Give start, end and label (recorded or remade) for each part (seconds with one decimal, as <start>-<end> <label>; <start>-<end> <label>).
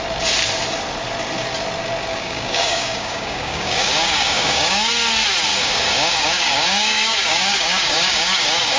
0.0-2.1 recorded; 2.1-4.9 remade; 4.9-5.5 recorded; 5.5-8.8 remade